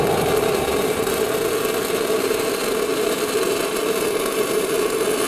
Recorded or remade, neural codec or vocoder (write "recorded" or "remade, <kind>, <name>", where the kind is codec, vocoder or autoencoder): recorded